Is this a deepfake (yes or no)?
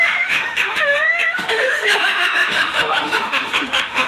yes